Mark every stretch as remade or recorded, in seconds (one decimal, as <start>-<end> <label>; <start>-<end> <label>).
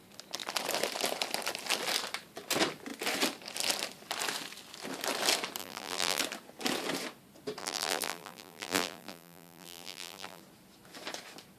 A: 0.0-5.6 recorded; 5.6-6.2 remade; 6.2-7.6 recorded; 7.6-10.4 remade; 10.4-11.6 recorded